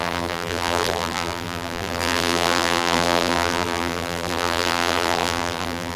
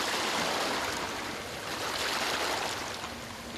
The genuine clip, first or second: second